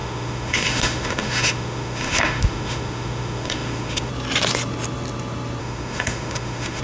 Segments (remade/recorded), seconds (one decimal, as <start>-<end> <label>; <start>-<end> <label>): 0.0-4.1 remade; 4.1-5.6 recorded; 5.6-6.8 remade